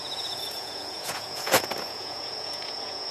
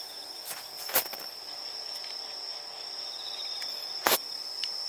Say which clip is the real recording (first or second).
second